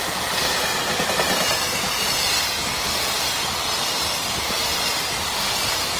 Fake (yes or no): no